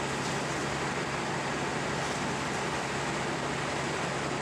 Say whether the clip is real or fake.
real